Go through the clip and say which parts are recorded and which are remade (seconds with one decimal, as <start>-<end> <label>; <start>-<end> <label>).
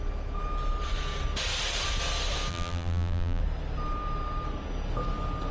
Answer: 0.0-2.5 recorded; 2.5-3.4 remade; 3.4-5.5 recorded